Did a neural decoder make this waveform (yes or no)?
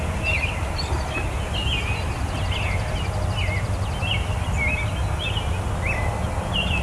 no